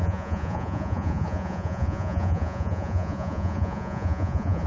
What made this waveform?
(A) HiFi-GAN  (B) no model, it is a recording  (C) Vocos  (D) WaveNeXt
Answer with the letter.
C